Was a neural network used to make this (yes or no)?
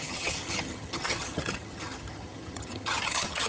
yes